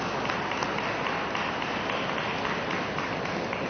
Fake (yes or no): no